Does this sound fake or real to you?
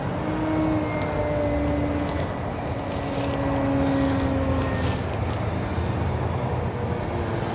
real